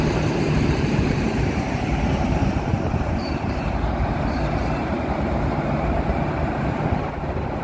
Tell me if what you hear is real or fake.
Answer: fake